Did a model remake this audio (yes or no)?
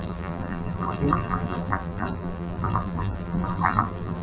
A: yes